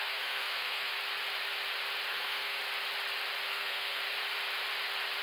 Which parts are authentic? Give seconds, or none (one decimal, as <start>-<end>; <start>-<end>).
0.9-2.1; 2.6-3.5; 4.0-5.2